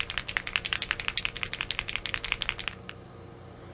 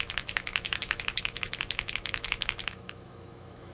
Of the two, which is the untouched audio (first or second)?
first